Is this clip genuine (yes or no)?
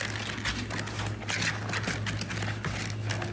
yes